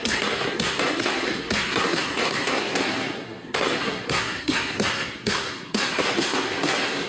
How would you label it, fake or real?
fake